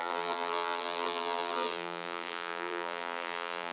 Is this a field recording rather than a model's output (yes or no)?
no